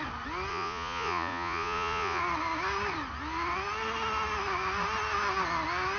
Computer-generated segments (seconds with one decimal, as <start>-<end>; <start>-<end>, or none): 0.5-2.2